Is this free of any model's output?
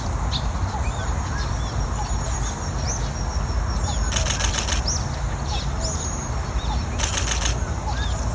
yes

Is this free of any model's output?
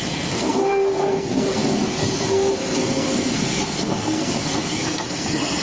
no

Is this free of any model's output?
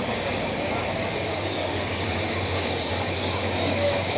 no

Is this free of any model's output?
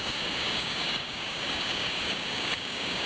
no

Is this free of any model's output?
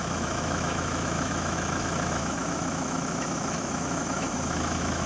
no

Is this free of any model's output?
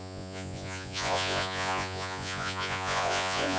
no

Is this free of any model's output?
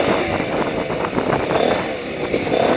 yes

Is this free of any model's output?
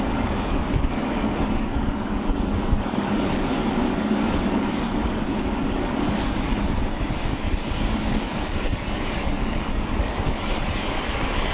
no